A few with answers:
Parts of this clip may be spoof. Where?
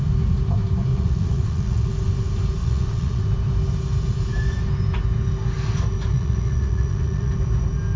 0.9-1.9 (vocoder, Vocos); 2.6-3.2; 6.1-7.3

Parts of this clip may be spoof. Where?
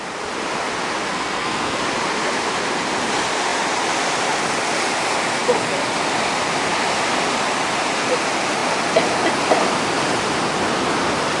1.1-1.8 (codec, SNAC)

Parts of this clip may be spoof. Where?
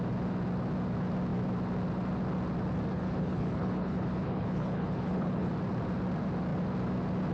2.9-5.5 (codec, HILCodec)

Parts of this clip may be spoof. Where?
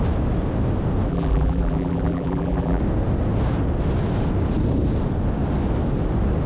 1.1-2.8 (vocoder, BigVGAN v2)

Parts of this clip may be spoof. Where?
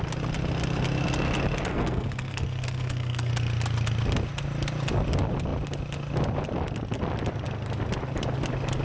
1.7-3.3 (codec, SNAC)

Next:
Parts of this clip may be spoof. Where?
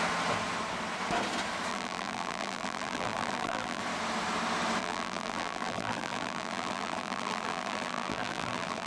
1.7-3.8 (vocoder, BigVGAN v2); 4.8-8.9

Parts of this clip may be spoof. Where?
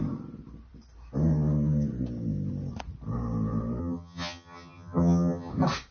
3.8-5.5 (vocoder, HiFi-GAN)